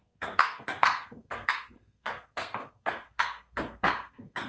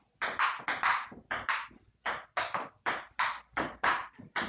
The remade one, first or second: first